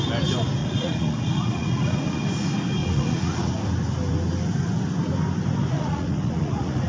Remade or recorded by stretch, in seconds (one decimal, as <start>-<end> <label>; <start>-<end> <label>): 0.0-0.6 recorded; 0.6-2.2 remade; 2.2-2.8 recorded; 2.8-3.5 remade; 3.5-5.7 recorded; 5.7-6.9 remade